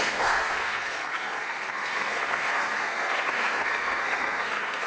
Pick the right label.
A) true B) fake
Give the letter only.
B